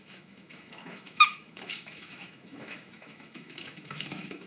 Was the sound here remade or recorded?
remade